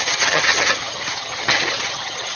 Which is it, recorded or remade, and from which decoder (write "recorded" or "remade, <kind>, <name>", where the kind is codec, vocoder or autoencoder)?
remade, vocoder, HiFi-GAN